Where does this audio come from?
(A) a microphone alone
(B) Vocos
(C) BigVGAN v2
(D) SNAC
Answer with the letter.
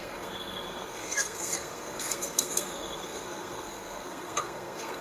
D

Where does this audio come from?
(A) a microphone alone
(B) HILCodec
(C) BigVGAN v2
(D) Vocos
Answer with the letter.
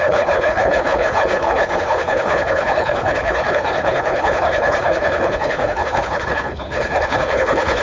B